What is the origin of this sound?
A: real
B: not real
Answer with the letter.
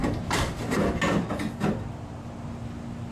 A